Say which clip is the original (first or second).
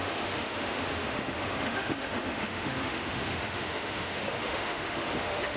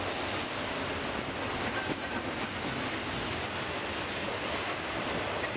second